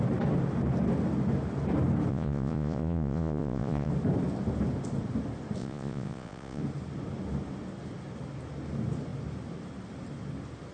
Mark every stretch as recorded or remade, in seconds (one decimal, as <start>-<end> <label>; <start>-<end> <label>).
0.0-2.1 recorded; 2.1-3.9 remade; 3.9-5.6 recorded; 5.6-6.6 remade; 6.6-10.7 recorded